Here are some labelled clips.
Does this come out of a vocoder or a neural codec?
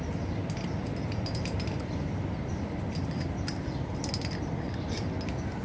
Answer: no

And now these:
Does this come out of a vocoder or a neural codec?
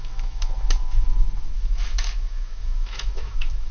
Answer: yes